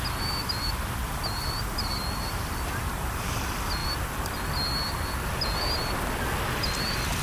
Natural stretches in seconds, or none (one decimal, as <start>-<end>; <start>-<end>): 0.0-1.0; 3.3-7.2